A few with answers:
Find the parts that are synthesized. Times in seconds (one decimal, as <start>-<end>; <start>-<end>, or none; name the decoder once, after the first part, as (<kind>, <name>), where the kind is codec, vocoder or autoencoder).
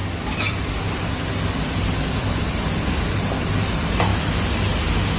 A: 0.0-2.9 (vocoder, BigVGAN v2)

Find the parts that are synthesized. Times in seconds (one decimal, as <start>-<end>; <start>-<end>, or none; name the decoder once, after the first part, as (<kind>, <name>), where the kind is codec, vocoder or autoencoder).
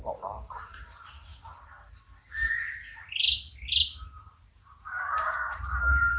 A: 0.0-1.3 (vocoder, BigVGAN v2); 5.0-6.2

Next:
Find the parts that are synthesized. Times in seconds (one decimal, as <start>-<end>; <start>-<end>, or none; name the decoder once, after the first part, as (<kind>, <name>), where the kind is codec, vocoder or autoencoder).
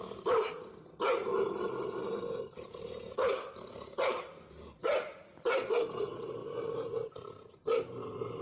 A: 1.3-4.1 (vocoder, BigVGAN v2); 4.8-5.7; 6.4-8.4